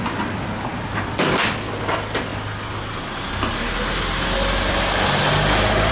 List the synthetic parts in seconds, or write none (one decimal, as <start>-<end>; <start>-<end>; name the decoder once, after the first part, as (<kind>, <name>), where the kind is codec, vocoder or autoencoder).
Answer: none